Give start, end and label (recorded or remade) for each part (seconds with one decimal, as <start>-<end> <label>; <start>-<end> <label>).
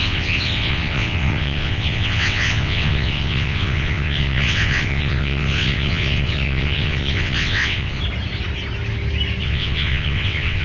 0.0-8.0 remade; 8.0-9.4 recorded; 9.4-10.6 remade